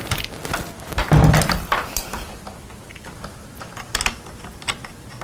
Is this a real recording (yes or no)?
yes